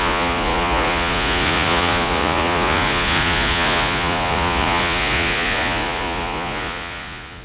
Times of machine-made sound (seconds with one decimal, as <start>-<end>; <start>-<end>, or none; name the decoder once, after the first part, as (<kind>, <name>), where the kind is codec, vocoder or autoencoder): 0.0-7.4 (vocoder, Vocos)